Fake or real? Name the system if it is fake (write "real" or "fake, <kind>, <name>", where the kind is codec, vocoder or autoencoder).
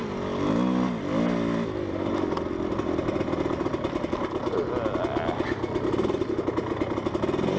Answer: real